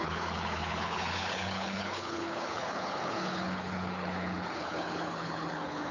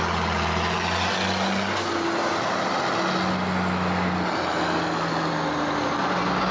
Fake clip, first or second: first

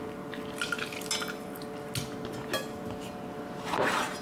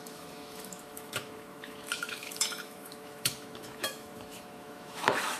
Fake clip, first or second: second